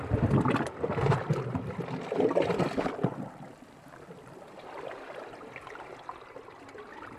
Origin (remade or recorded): recorded